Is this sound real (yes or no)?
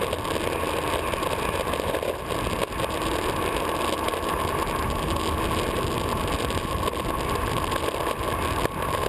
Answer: yes